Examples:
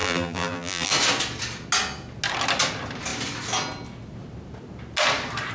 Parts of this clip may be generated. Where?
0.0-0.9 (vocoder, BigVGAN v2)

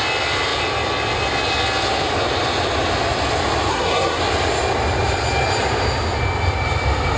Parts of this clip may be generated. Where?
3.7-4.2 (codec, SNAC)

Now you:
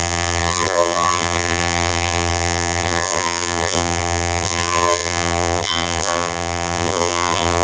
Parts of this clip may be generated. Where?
0.0-7.6 (vocoder, BigVGAN v2)

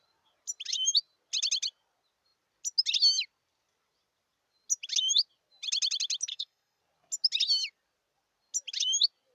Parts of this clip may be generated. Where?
6.3-6.8 (codec, SNAC)

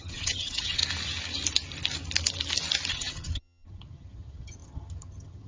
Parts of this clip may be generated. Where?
0.0-0.8 (vocoder, HiFi-GAN); 2.9-5.5